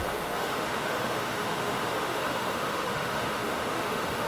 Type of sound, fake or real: fake